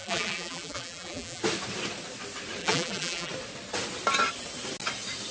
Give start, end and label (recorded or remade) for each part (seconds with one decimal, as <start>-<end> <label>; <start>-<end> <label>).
0.0-1.4 remade; 1.4-2.6 recorded; 2.6-3.3 remade; 3.3-5.3 recorded